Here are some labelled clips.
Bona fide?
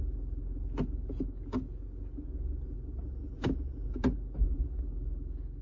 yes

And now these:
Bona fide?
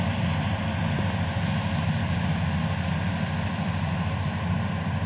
yes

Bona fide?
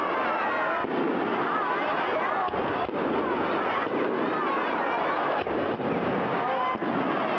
yes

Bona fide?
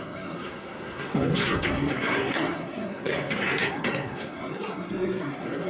no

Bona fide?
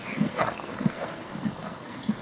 no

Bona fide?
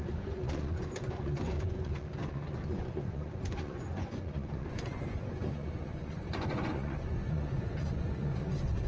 no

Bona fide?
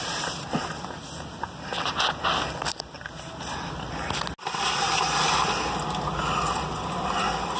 yes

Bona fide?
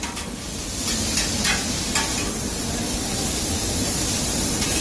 yes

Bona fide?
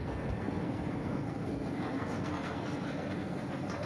no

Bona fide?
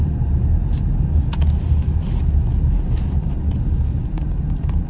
yes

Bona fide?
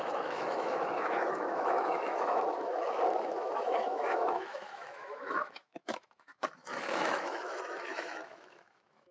no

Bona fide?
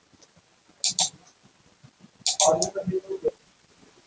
yes